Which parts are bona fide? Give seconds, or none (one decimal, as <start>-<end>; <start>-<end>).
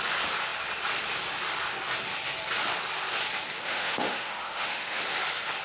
0.0-3.6; 5.0-5.6